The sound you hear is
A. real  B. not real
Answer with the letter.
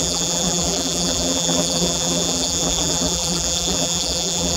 B